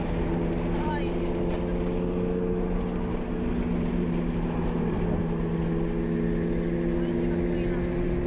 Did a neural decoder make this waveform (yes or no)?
no